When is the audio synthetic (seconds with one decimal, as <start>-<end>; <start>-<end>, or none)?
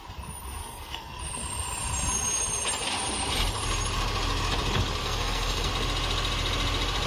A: 0.6-1.2; 5.0-5.7